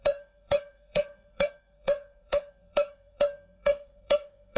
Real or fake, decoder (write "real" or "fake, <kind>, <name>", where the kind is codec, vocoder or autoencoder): fake, codec, SNAC